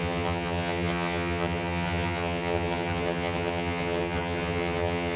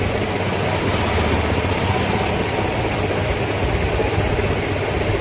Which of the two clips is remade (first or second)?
first